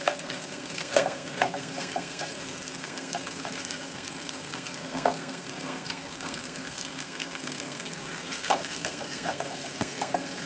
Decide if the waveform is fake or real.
fake